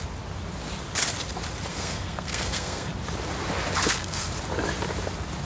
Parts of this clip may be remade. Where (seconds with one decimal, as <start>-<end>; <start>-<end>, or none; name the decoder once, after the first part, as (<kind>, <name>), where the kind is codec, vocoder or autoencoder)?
1.7-2.9 (codec, SNAC); 3.8-4.3

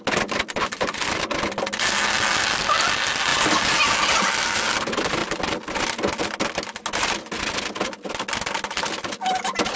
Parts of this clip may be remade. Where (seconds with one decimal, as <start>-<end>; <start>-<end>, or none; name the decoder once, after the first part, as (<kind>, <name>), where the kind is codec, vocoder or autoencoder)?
none

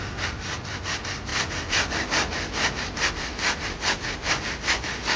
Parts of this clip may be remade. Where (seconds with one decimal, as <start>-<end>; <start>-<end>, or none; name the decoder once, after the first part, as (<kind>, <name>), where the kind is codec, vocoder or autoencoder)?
none

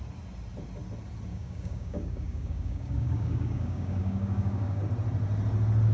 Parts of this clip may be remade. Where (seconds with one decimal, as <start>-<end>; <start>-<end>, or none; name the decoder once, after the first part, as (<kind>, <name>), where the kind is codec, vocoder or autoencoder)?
1.3-4.8 (codec, DAC)

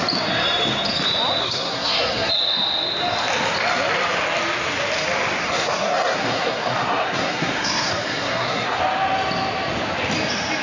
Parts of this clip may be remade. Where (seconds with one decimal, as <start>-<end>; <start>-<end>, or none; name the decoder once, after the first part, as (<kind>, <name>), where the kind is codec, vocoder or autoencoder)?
1.4-2.3 (codec, SNAC); 5.4-8.8